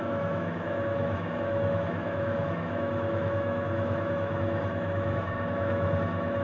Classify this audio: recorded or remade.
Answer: remade